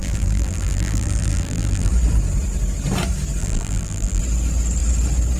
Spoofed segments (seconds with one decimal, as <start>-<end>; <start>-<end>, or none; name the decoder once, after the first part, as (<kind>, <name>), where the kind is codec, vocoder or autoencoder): 0.0-1.9 (vocoder, BigVGAN v2); 3.4-4.2